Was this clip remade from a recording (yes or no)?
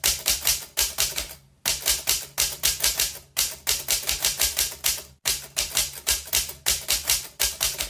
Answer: no